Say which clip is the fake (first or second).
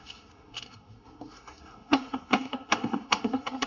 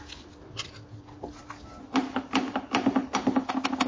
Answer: first